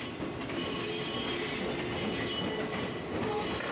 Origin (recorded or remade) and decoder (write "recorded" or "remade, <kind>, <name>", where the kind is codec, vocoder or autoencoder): recorded